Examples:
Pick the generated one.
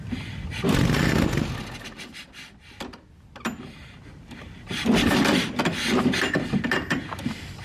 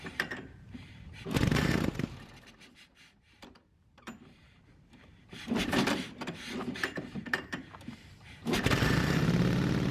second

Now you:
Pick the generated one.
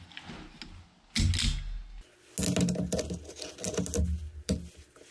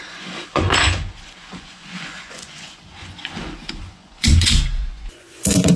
second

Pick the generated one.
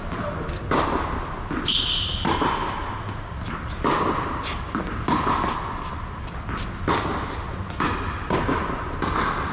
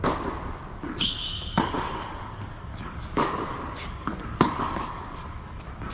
second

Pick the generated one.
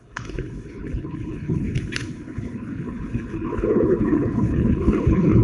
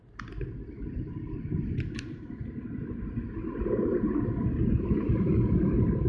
first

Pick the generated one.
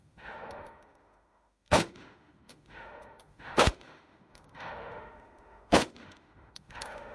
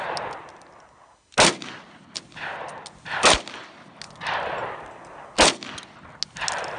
first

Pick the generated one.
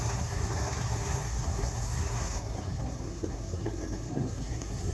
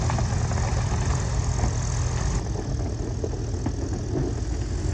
first